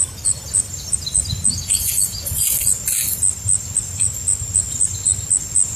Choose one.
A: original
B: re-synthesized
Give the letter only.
A